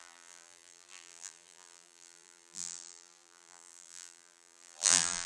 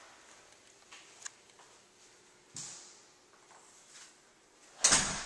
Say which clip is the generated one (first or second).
first